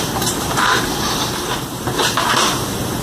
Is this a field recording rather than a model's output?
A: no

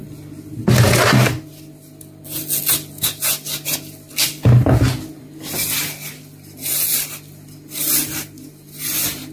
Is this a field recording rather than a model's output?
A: yes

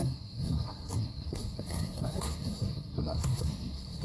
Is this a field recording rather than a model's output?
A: no